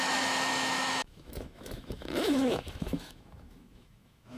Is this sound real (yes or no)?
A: no